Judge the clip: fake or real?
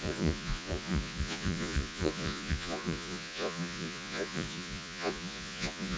fake